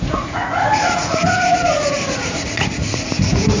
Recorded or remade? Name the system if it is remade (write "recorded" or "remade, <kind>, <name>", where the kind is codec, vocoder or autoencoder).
remade, vocoder, Vocos